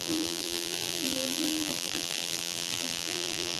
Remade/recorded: remade